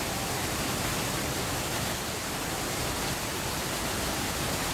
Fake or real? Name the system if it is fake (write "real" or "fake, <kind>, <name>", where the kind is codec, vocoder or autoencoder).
fake, vocoder, BigVGAN v2